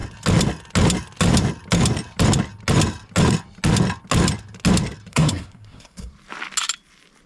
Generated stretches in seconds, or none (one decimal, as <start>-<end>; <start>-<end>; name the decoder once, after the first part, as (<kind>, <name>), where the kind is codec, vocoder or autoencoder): 5.1-6.1 (codec, SNAC)